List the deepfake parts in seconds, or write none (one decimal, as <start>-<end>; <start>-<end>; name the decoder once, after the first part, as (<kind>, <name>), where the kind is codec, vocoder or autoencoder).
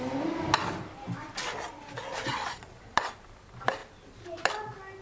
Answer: 2.3-3.1 (vocoder, Vocos)